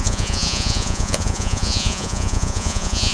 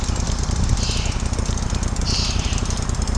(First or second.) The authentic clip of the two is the second